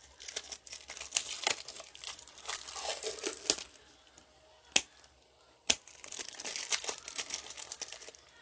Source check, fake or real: real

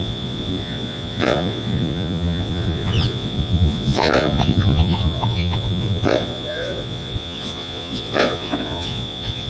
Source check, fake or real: fake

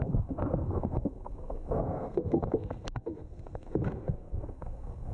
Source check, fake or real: fake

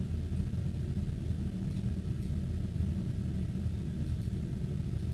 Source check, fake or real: real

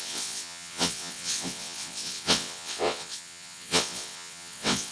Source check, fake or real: fake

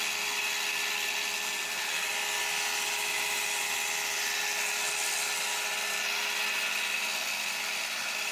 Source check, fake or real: real